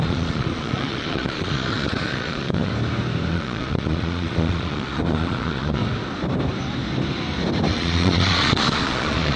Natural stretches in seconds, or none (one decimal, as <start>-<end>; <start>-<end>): 2.7-3.3; 5.8-7.7

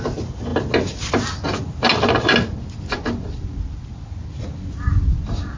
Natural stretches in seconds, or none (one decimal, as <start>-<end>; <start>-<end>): 0.0-5.6

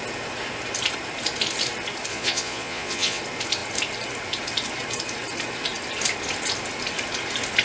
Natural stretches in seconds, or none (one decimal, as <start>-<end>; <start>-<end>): 0.0-2.1; 3.2-7.6

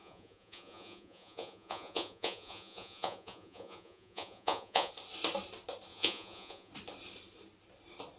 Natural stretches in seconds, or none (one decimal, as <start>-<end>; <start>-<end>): 4.9-5.9; 6.7-8.2

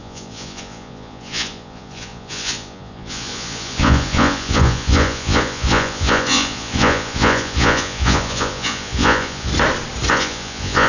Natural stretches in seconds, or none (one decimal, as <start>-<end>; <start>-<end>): 9.5-10.1